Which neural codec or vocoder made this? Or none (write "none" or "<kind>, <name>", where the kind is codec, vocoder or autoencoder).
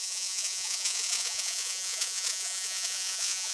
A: vocoder, Vocos